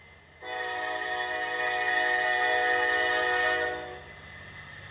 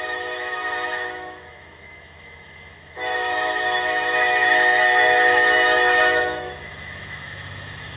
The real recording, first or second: first